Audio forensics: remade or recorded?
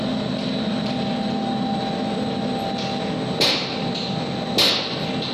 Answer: recorded